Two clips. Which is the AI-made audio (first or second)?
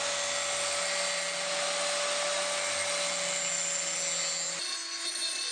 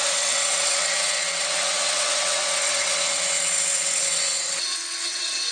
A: second